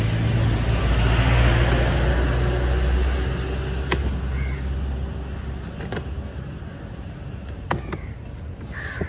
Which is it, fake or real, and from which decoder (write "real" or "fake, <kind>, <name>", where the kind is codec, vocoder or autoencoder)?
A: real